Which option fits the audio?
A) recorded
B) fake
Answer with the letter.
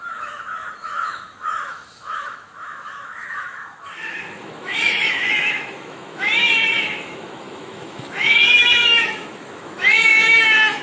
B